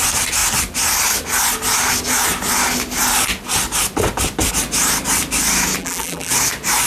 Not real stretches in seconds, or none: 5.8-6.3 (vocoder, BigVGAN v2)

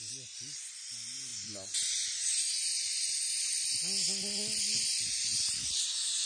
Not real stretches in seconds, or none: none

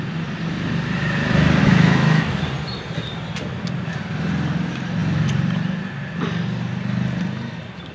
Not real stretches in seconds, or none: 1.6-2.4 (autoencoder, DAC-VAE)

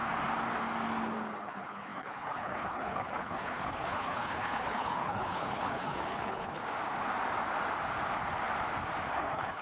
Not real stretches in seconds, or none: 1.4-6.6 (codec, HILCodec); 9.1-9.6

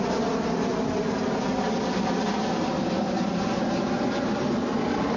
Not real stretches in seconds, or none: none

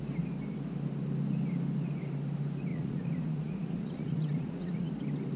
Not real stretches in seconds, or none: 2.7-4.9 (vocoder, Vocos)

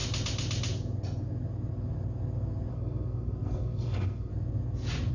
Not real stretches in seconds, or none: 2.7-4.3 (codec, SNAC)

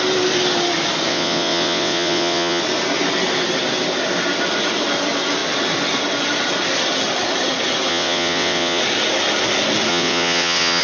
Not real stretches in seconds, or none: 1.1-2.6 (vocoder, WaveNeXt); 7.9-8.8; 9.9-10.8